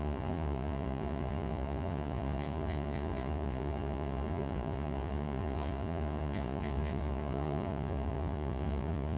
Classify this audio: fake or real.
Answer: fake